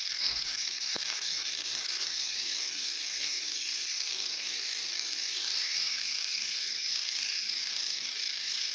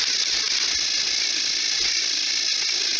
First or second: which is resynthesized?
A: first